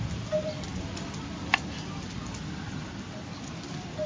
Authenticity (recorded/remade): remade